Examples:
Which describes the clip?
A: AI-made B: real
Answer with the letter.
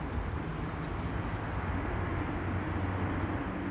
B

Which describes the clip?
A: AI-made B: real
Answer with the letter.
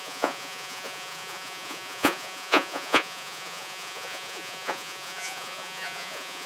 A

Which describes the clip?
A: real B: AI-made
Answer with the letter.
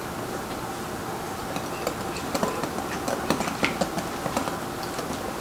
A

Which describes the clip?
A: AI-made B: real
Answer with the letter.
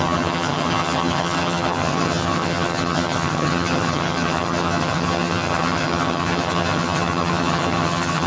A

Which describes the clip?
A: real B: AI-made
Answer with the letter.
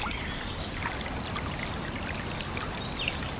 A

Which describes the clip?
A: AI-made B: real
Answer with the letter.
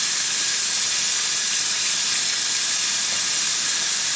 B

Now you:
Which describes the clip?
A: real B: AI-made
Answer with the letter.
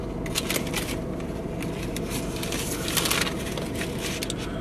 A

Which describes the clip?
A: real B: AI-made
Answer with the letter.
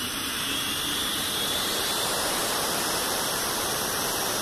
B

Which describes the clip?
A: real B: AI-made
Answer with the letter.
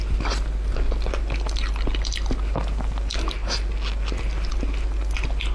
A